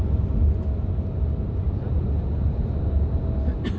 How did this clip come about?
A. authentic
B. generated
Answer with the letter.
A